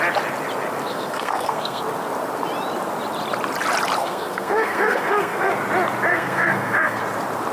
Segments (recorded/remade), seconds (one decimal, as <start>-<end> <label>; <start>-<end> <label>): 0.0-0.8 recorded; 0.8-1.8 remade; 1.8-4.0 recorded; 4.0-5.5 remade; 5.5-6.1 recorded; 6.1-7.0 remade; 7.0-7.5 recorded